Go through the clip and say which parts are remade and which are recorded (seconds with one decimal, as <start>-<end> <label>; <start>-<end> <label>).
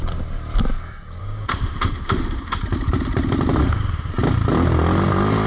0.0-1.2 recorded; 1.2-2.6 remade; 2.6-3.6 recorded; 3.6-4.1 remade; 4.1-5.5 recorded